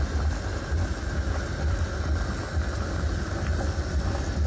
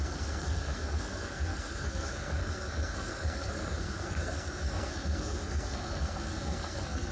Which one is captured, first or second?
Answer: first